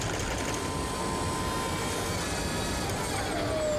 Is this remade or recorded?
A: recorded